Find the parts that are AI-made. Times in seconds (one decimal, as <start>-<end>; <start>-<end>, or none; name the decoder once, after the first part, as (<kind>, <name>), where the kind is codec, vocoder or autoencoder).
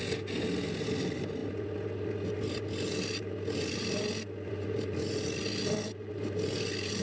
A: none